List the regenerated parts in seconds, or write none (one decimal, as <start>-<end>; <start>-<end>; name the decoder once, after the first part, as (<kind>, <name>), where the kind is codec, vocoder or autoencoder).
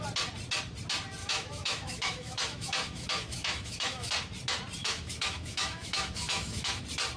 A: 1.2-4.1 (autoencoder, DAC-VAE); 4.8-6.8